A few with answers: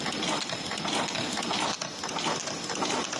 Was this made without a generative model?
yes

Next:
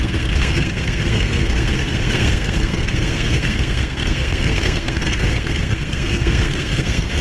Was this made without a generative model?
no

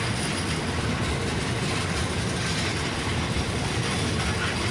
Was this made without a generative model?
no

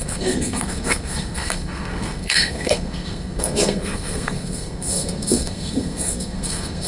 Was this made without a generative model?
no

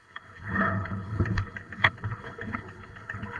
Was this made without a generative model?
no